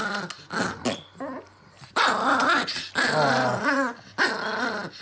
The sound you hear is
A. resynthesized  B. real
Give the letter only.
B